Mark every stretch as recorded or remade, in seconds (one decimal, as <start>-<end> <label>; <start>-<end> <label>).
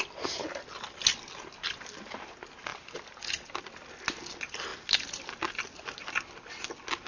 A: 0.0-2.7 recorded; 2.7-3.6 remade; 3.6-7.1 recorded